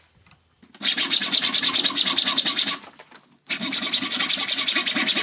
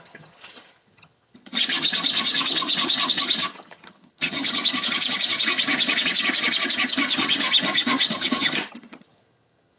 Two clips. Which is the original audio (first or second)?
first